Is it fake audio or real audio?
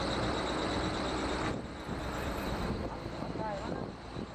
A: real